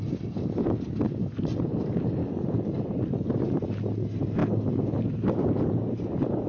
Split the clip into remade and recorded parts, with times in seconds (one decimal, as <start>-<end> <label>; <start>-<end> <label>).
0.0-6.5 recorded